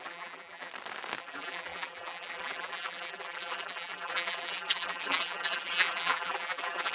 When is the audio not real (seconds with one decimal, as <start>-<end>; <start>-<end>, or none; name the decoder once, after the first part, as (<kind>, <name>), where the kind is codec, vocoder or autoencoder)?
0.0-0.7 (vocoder, BigVGAN v2); 1.2-6.9